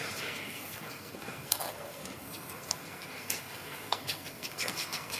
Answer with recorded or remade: remade